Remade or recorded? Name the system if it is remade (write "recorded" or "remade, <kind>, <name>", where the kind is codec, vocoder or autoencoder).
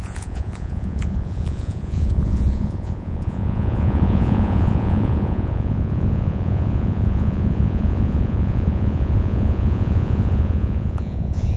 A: remade, vocoder, Vocos